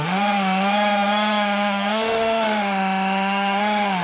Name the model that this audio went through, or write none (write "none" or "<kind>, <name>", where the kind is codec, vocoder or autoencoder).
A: autoencoder, DAC-VAE